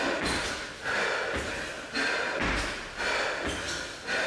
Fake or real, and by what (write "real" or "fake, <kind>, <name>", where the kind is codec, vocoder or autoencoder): real